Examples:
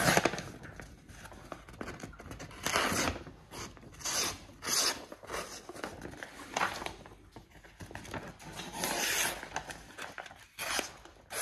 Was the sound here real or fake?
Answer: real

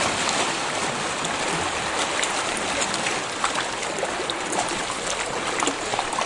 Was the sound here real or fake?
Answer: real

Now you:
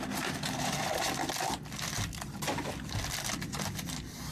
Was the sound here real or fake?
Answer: real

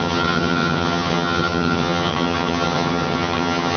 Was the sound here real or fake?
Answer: fake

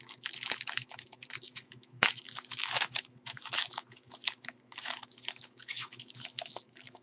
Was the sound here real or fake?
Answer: fake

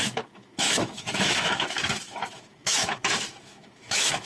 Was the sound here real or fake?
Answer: fake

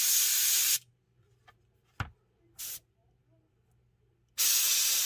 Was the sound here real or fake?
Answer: real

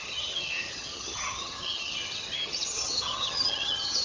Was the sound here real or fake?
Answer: fake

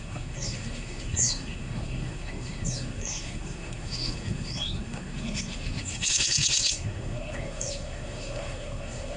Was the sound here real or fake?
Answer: fake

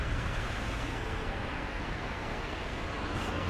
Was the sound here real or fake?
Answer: fake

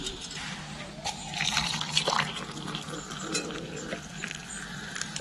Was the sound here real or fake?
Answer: real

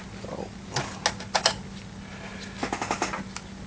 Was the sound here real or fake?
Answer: real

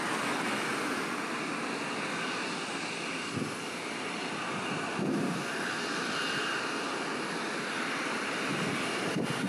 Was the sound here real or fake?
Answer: real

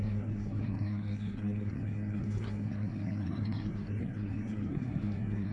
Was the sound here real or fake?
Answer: fake